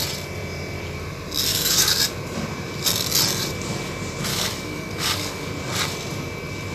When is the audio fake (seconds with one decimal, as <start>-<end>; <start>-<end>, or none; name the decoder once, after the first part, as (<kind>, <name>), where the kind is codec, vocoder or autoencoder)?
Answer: 1.5-2.0 (codec, DAC); 4.3-5.5